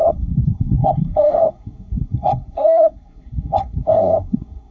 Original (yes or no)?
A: no